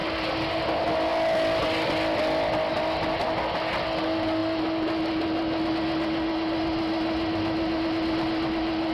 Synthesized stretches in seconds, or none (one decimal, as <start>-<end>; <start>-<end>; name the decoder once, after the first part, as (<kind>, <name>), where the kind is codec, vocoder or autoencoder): none